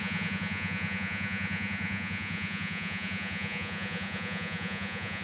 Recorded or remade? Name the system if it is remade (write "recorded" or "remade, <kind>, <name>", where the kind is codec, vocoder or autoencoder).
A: remade, vocoder, Vocos